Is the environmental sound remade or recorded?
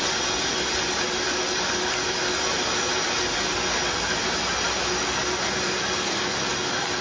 recorded